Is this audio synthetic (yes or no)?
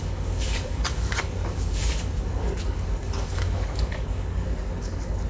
yes